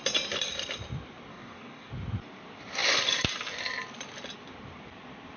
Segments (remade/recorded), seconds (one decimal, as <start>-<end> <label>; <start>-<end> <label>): 0.0-1.3 recorded; 1.3-1.9 remade; 1.9-5.4 recorded